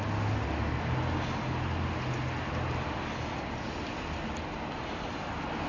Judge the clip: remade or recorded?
recorded